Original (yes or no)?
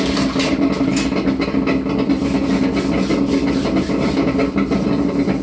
yes